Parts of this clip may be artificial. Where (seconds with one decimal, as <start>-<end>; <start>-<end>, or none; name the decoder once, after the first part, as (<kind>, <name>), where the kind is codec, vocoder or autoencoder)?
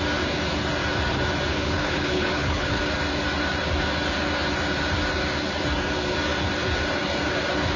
1.5-2.8 (codec, HILCodec)